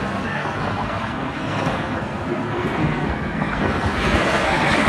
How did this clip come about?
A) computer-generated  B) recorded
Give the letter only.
A